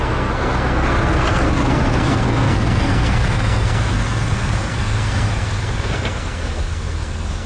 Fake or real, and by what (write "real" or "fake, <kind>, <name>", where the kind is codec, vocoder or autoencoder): fake, codec, SNAC